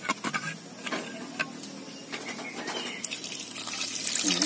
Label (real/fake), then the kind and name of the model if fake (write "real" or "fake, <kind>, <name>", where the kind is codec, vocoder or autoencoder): real